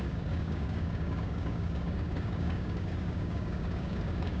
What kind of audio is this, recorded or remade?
remade